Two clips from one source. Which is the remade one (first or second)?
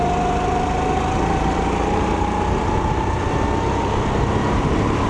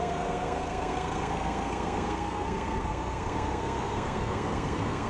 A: second